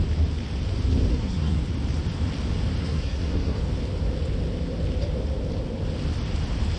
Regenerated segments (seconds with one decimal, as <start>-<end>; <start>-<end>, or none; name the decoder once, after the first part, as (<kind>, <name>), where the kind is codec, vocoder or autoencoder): 1.1-1.6 (codec, SNAC); 2.8-3.6